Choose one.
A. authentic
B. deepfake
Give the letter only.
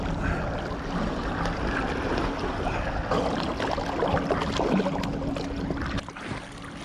A